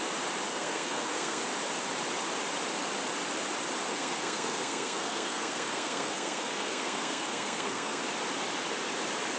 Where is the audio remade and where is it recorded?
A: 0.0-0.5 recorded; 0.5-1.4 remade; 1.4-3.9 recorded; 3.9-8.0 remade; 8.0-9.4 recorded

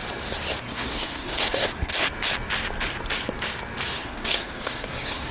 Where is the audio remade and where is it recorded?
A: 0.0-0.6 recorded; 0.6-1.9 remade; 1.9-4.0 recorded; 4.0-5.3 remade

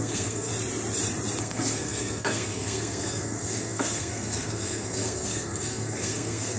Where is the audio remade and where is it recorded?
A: 0.0-0.5 remade; 0.5-1.4 recorded; 1.4-6.6 remade

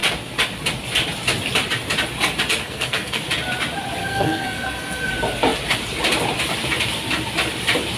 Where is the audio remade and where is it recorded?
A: 0.0-2.6 recorded; 2.6-3.2 remade; 3.2-4.0 recorded; 4.0-5.1 remade; 5.1-8.0 recorded

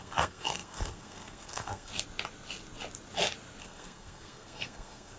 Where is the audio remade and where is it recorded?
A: 0.0-1.9 remade; 1.9-3.6 recorded; 3.6-5.2 remade